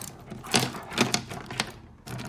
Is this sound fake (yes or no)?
no